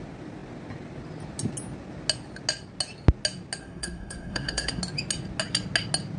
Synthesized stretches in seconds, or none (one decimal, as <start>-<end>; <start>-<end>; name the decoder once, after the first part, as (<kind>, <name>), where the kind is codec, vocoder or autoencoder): 3.6-4.8 (codec, SNAC)